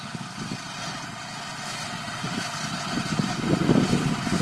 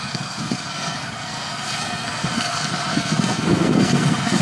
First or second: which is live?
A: first